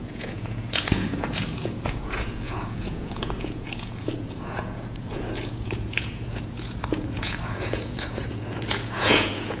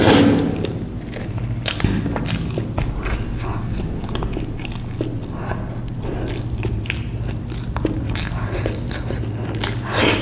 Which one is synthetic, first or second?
first